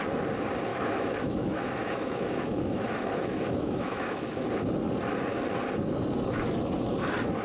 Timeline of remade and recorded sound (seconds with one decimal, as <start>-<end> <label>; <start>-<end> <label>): 0.0-0.7 recorded; 0.7-4.2 remade; 4.2-7.4 recorded